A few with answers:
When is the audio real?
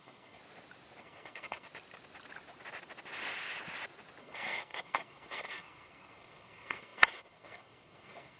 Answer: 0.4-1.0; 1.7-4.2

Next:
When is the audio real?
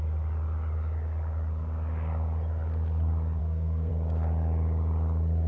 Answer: 0.0-3.4; 3.9-5.5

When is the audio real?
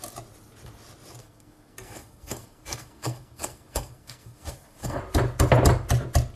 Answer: 0.0-1.2; 5.0-6.4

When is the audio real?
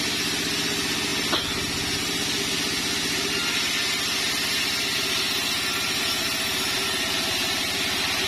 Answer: 0.0-8.3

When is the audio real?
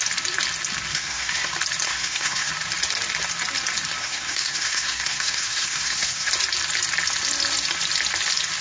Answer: 0.0-0.9; 1.5-1.9; 2.5-4.0; 6.3-8.6